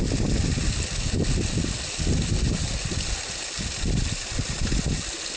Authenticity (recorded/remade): recorded